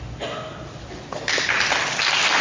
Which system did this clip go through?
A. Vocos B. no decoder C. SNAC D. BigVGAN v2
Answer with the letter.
B